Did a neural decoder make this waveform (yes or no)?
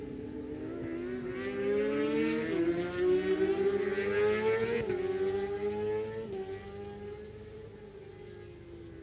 no